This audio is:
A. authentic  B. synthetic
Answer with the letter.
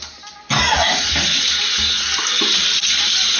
A